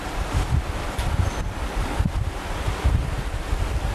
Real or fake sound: real